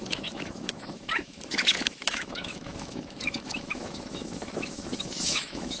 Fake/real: fake